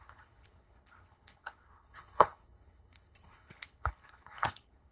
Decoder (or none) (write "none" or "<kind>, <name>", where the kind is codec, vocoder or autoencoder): codec, HILCodec